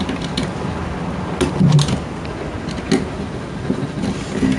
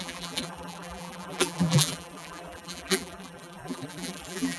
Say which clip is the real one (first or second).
first